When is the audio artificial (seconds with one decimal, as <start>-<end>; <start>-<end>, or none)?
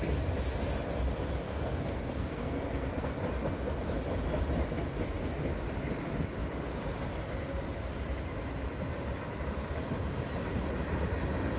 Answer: 1.5-3.1